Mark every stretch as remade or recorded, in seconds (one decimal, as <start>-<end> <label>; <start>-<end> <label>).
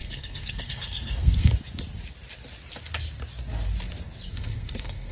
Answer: 0.0-1.5 remade; 1.5-4.3 recorded; 4.3-5.1 remade